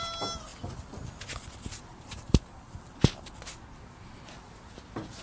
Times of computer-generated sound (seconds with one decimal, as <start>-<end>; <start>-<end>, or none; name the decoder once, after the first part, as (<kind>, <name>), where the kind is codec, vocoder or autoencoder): none